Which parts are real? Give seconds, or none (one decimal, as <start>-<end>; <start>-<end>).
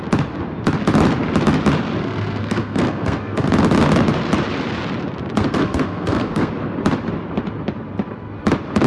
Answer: 0.0-2.0; 3.5-5.4; 6.5-8.9